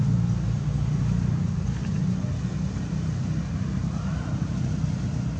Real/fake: real